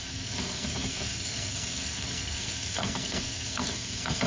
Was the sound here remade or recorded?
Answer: remade